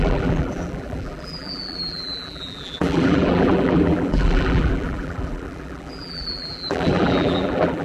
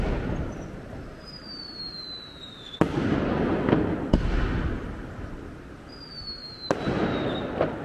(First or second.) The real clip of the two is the second